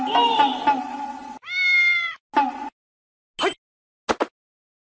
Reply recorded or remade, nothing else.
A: recorded